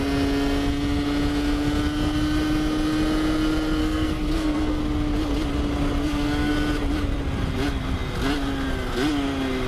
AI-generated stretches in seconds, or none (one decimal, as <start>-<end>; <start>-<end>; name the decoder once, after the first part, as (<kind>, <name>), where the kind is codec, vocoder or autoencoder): 3.8-4.8 (codec, SNAC); 6.0-6.5